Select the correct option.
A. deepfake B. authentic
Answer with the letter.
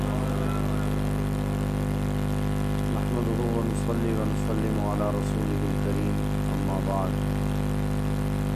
B